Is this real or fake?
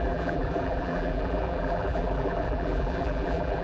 fake